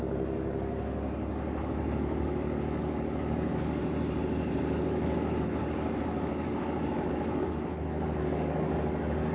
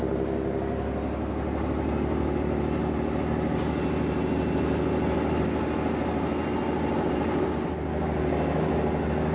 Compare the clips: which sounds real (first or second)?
second